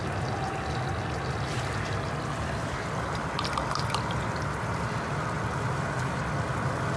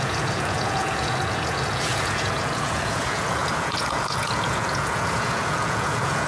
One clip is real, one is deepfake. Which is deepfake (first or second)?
second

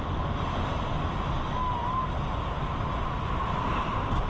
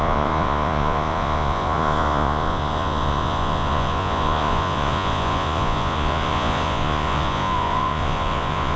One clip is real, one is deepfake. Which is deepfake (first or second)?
second